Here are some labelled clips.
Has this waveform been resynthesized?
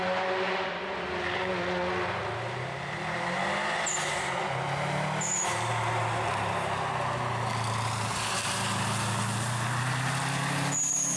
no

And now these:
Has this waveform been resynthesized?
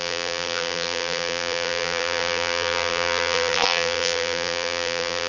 yes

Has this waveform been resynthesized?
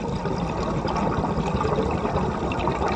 no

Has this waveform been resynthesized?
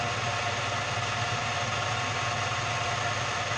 no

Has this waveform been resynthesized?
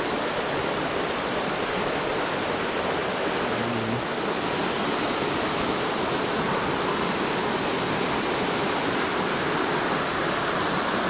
no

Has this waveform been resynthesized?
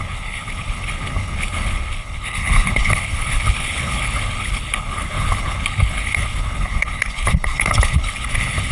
yes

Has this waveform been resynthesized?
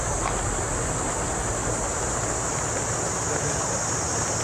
no